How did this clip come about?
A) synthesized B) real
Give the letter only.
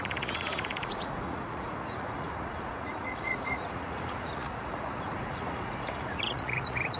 A